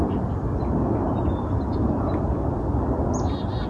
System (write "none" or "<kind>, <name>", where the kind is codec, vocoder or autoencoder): none